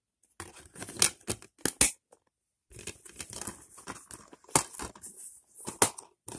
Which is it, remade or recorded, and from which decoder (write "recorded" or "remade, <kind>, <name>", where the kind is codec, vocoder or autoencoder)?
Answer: recorded